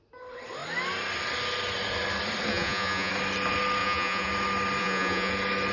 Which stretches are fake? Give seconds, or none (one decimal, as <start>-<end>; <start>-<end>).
2.5-3.1; 3.8-4.3; 4.8-5.3